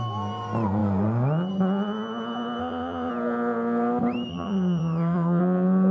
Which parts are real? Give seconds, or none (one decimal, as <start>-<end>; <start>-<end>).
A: 0.0-2.6; 3.1-4.3; 5.4-5.9